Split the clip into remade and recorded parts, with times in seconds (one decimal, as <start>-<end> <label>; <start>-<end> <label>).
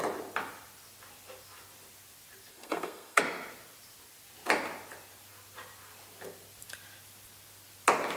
0.0-2.5 recorded; 2.5-3.2 remade; 3.2-8.2 recorded